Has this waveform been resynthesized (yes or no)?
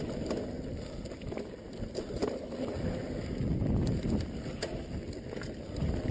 no